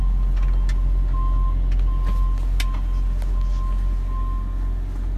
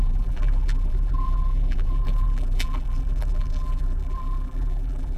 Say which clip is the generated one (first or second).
second